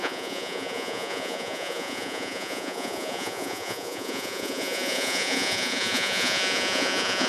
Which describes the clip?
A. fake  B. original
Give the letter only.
A